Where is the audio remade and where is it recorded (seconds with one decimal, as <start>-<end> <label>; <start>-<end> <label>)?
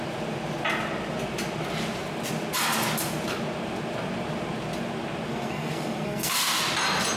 0.0-5.3 recorded; 5.3-6.6 remade; 6.6-7.2 recorded